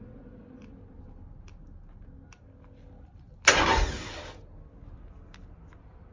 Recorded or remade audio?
recorded